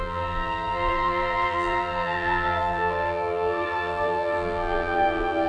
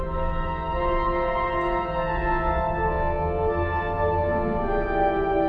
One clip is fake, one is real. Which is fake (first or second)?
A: first